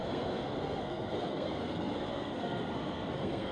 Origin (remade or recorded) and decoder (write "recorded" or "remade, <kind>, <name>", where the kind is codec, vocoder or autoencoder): remade, codec, SNAC